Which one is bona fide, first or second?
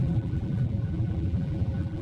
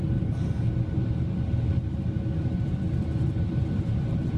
second